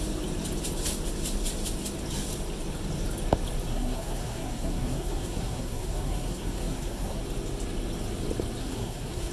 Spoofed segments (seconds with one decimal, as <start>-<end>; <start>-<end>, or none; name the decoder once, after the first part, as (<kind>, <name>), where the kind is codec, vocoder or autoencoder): 3.7-7.2 (codec, SNAC); 8.6-9.3